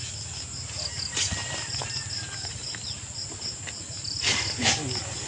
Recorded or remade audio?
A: recorded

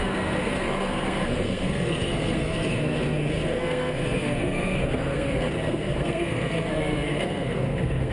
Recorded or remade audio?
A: remade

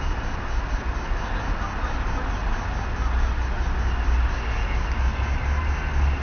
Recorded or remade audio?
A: recorded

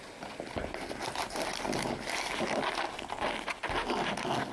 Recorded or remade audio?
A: recorded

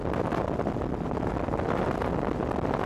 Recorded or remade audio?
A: recorded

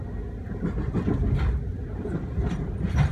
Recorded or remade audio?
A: recorded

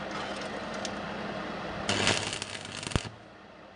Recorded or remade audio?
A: recorded